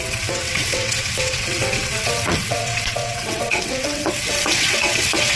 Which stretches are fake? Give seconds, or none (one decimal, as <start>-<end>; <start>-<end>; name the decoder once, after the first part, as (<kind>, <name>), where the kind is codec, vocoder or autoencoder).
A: 0.0-5.4 (vocoder, WaveNeXt)